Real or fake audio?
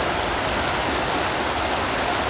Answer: real